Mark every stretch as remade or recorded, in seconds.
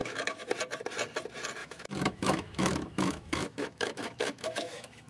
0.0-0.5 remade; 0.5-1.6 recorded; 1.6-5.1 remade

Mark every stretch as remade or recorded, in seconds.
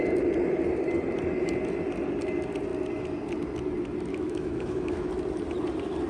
0.0-4.1 recorded; 4.1-5.1 remade; 5.1-6.1 recorded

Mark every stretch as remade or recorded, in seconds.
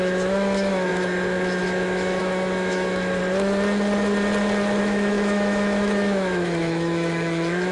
0.0-3.2 remade; 3.2-4.8 recorded; 4.8-7.7 remade